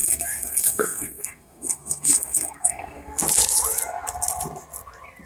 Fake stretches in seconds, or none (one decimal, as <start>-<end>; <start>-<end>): 0.0-3.2

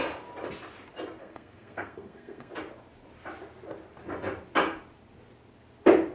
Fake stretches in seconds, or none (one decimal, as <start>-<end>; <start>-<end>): 1.2-2.5

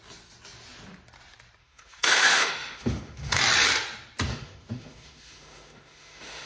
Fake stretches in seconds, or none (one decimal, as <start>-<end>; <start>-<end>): 1.6-3.4; 4.3-6.5

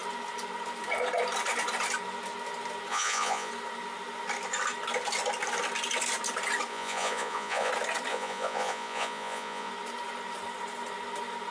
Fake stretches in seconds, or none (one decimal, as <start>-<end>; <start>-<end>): 2.9-3.5; 6.7-7.7; 8.1-9.7

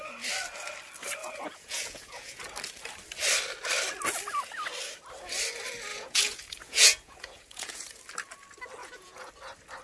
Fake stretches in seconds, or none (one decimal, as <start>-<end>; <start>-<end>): 1.2-2.4; 5.9-8.0; 8.8-9.3

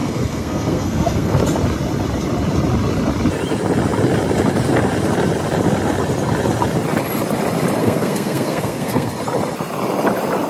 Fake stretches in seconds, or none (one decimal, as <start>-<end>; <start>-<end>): 0.0-1.4; 7.8-9.1

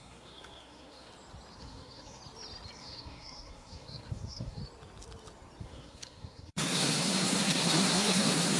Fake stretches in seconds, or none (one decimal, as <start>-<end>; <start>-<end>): 0.0-1.1; 1.6-2.2; 2.8-4.6; 5.6-8.6

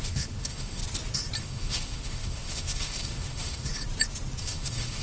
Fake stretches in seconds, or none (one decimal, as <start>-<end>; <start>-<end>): 0.0-0.8; 1.4-3.7; 4.4-5.0